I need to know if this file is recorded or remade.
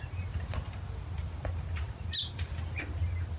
recorded